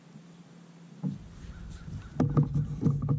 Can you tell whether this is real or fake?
real